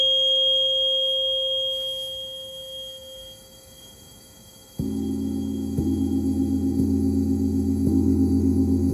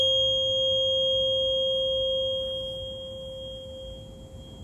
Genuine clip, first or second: second